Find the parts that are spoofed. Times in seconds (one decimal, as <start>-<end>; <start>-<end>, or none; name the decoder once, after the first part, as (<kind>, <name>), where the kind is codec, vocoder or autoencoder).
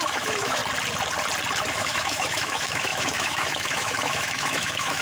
0.0-0.6 (autoencoder, DAC-VAE); 1.7-5.0